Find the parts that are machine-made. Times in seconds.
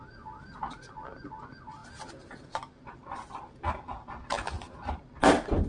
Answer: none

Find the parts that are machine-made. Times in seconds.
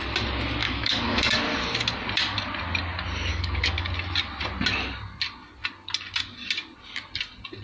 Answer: 0.6-1.4; 3.3-3.9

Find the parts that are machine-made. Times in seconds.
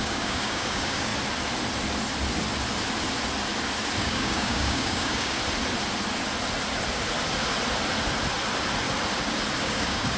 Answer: 0.0-1.1; 4.0-5.4; 9.6-10.2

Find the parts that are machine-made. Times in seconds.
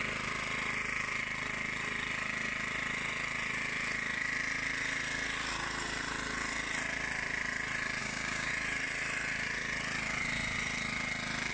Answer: 8.0-8.5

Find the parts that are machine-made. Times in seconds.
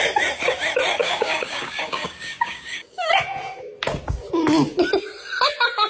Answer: 1.0-3.1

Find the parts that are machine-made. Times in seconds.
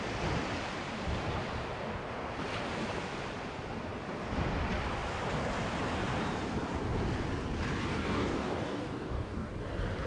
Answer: 7.9-9.5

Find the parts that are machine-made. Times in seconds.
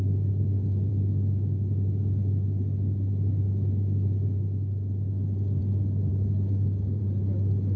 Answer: 6.1-7.0